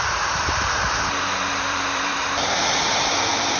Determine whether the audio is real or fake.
fake